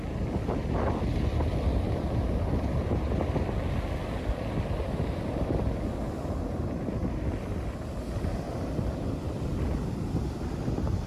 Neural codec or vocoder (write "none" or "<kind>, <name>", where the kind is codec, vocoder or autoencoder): none